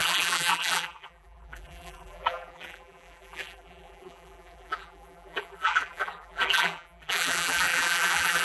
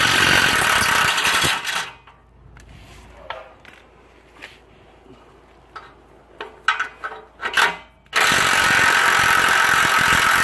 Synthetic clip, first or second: first